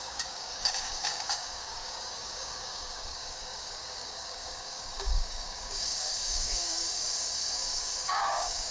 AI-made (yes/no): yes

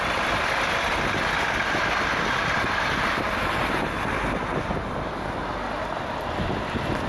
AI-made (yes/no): no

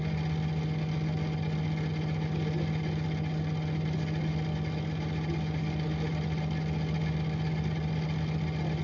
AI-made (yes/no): no